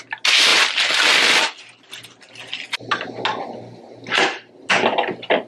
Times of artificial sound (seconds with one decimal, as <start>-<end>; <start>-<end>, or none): none

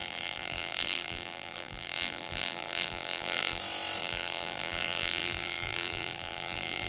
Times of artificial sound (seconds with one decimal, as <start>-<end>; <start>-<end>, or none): 0.0-3.6; 4.0-6.9

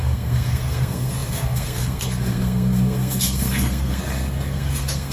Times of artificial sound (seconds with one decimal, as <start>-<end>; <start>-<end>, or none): 0.0-5.1

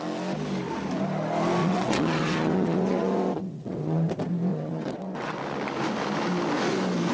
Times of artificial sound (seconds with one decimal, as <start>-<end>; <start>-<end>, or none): 1.6-4.1; 4.5-5.4

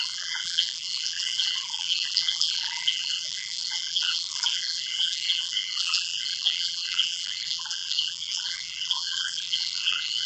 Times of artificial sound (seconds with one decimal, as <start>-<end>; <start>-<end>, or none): 0.0-10.3

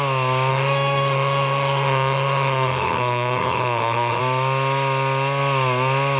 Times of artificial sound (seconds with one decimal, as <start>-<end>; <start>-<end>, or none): 0.5-4.2